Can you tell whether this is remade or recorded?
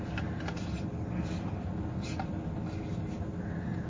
recorded